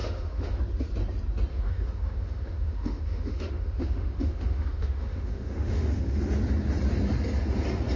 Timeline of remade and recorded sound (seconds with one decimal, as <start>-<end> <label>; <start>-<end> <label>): 0.0-0.6 remade; 0.6-1.5 recorded; 1.5-6.3 remade; 6.3-8.0 recorded